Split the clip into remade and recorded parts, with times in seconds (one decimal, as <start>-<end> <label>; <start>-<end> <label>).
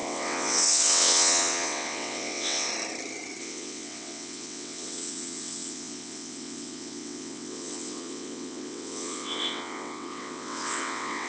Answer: 0.0-2.7 remade; 2.7-3.4 recorded; 3.4-11.3 remade